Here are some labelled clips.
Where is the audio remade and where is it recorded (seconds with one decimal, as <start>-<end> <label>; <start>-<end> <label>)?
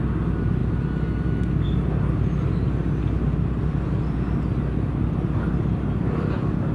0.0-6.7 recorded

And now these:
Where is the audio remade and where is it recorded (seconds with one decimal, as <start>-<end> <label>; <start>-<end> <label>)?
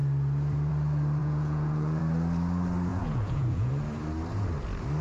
0.0-1.2 recorded; 1.2-2.0 remade; 2.0-2.9 recorded; 2.9-3.7 remade; 3.7-5.0 recorded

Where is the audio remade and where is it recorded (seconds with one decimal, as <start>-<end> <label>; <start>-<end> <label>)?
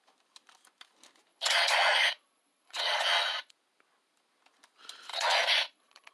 0.0-1.3 recorded; 1.3-3.5 remade; 3.5-5.1 recorded; 5.1-6.1 remade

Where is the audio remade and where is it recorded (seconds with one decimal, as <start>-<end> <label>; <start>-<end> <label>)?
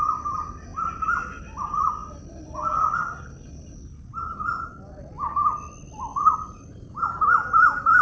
0.0-8.0 recorded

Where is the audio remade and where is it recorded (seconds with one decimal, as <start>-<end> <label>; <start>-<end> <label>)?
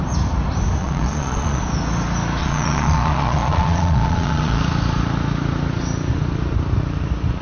0.0-0.8 recorded; 0.8-1.6 remade; 1.6-2.4 recorded; 2.4-4.6 remade; 4.6-7.4 recorded